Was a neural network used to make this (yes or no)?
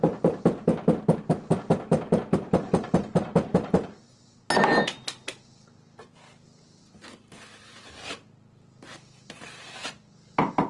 no